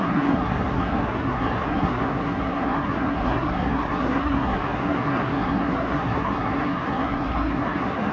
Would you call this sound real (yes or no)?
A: no